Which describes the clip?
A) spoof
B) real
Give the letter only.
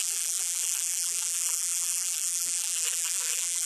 A